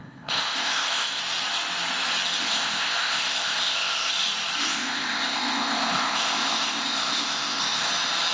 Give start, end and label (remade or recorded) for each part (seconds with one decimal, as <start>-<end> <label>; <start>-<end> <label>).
0.0-1.2 remade; 1.2-2.4 recorded; 2.4-4.1 remade; 4.1-4.6 recorded; 4.6-7.9 remade; 7.9-8.3 recorded